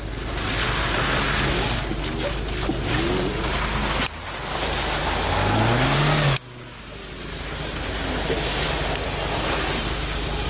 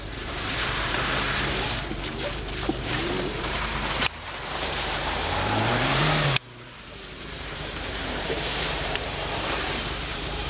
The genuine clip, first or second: first